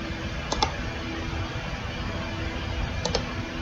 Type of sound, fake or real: real